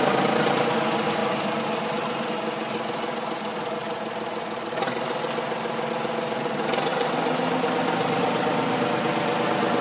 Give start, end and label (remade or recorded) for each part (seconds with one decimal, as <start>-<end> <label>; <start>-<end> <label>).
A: 0.0-9.8 recorded